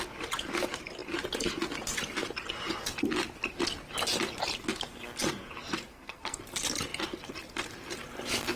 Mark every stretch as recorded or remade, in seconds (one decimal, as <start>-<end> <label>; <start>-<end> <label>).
0.0-5.9 recorded; 5.9-6.4 remade; 6.4-8.6 recorded